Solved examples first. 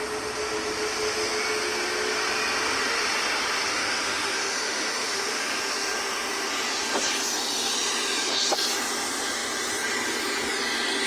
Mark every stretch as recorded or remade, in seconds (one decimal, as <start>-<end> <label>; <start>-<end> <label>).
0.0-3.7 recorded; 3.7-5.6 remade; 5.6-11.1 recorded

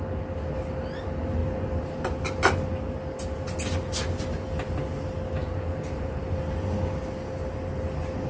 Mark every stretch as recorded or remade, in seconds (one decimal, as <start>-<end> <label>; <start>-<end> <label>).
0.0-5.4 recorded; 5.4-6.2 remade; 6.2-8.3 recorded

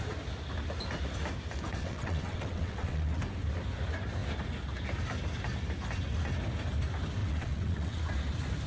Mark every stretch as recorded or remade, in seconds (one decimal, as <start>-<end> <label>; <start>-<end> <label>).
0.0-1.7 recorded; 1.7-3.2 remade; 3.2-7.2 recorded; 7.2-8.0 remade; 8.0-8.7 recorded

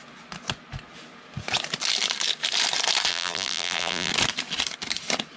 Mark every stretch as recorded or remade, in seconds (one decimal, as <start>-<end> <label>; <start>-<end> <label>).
0.0-3.1 recorded; 3.1-4.1 remade; 4.1-5.4 recorded

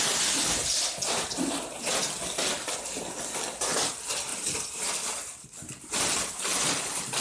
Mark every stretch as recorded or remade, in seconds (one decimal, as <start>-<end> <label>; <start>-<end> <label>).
0.0-7.2 recorded